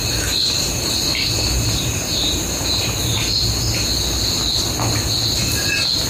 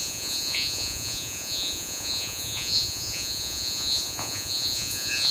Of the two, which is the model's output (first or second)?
second